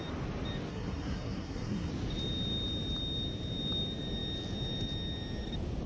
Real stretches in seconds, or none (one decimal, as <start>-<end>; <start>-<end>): 0.0-0.7; 1.9-5.9